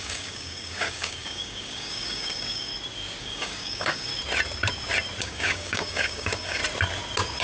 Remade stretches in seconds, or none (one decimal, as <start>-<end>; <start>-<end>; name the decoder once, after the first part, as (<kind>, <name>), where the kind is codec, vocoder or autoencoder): 0.0-2.7 (codec, DAC); 3.2-4.1; 5.2-6.6